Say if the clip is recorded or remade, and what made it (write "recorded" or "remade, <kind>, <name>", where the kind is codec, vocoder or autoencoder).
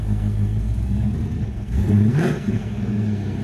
remade, codec, SNAC